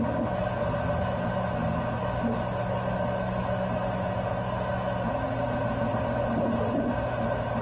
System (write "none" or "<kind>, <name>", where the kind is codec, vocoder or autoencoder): none